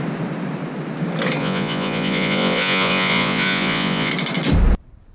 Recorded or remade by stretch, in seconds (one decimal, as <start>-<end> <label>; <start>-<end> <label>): 0.0-1.4 recorded; 1.4-4.1 remade; 4.1-5.1 recorded